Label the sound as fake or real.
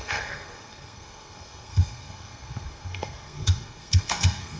fake